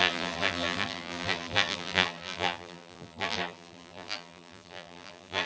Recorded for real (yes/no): no